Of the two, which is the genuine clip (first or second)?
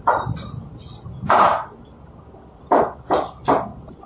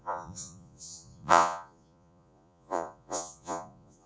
first